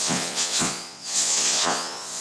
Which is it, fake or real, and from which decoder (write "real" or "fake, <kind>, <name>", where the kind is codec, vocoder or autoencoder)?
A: fake, vocoder, Vocos